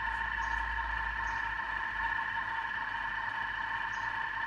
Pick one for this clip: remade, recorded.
recorded